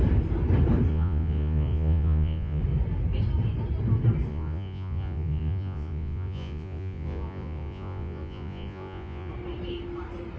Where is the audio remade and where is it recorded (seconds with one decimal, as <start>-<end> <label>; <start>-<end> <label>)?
0.0-0.9 recorded; 0.9-2.6 remade; 2.6-4.3 recorded; 4.3-9.3 remade; 9.3-10.4 recorded